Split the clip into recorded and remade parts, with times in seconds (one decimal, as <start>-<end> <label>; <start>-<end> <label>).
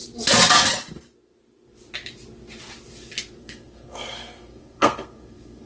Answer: 0.0-3.4 recorded; 3.4-5.7 remade